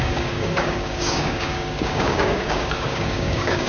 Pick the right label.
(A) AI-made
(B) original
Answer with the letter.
A